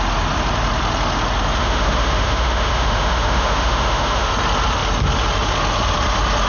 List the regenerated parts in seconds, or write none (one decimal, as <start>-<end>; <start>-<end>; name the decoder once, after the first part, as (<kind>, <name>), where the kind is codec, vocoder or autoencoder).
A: 1.6-4.3 (autoencoder, DAC-VAE)